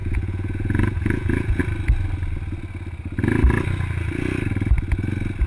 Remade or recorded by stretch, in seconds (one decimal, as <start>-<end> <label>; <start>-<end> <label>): 0.0-1.6 remade; 1.6-5.5 recorded

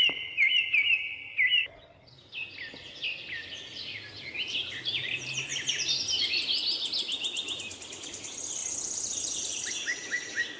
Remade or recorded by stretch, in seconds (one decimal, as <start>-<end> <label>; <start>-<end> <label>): 0.0-5.5 recorded; 5.5-6.6 remade; 6.6-10.6 recorded

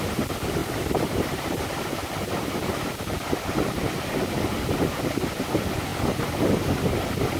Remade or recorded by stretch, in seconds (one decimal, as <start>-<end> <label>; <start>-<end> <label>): 0.0-0.6 recorded; 0.6-3.5 remade; 3.5-5.9 recorded; 5.9-6.6 remade; 6.6-7.4 recorded